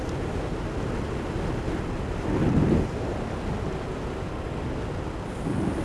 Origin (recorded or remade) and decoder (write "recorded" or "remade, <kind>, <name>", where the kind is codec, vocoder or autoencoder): recorded